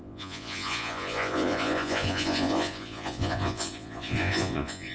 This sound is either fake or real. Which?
fake